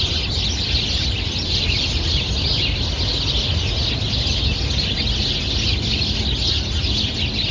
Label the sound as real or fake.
real